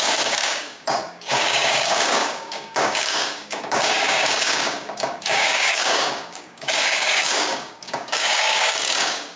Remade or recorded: remade